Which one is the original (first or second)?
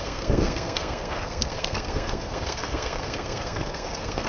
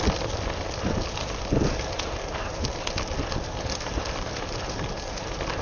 second